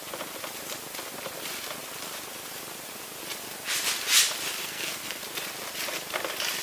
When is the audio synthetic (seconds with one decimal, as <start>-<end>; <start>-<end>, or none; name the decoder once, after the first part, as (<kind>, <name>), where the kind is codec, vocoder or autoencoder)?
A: 4.6-5.2 (codec, SNAC)